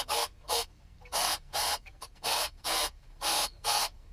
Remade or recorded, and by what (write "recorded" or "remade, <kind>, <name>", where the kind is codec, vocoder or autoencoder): remade, codec, SNAC